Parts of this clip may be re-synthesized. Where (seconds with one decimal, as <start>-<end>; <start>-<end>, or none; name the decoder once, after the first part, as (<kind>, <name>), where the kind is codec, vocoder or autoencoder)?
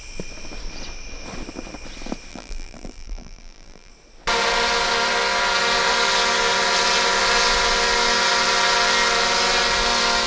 2.3-3.9 (vocoder, BigVGAN v2)